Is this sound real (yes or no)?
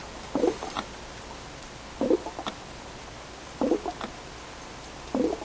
yes